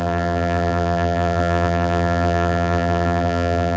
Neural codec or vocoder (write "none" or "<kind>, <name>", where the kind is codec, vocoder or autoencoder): vocoder, BigVGAN v2